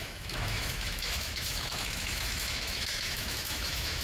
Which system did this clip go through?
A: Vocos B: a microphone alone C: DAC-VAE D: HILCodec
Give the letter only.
C